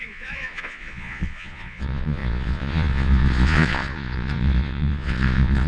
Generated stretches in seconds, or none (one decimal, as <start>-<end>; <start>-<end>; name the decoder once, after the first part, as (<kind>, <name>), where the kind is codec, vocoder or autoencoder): 0.0-5.7 (vocoder, Vocos)